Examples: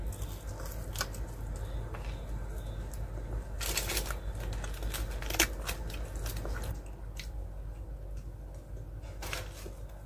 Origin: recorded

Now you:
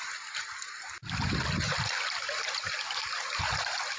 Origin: recorded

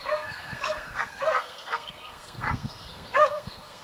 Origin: remade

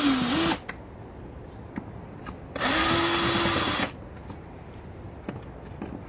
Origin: recorded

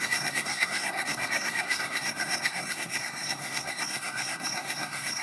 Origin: remade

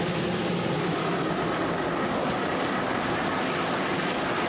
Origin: recorded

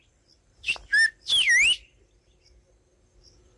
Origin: recorded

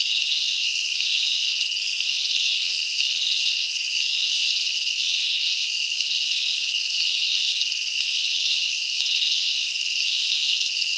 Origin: remade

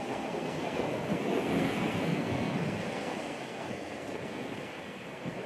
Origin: remade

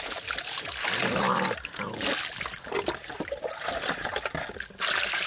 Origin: recorded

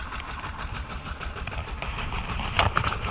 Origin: recorded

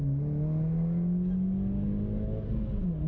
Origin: recorded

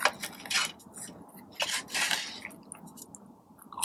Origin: recorded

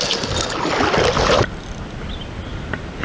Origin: recorded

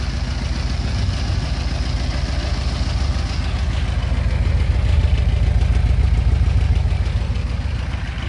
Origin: recorded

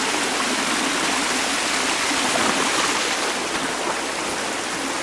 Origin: recorded